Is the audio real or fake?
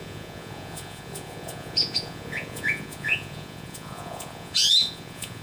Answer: fake